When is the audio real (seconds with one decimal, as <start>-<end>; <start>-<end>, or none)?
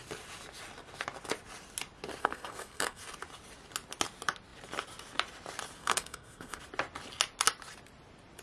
0.0-2.2; 3.0-5.8; 6.6-8.4